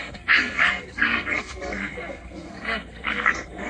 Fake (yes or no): yes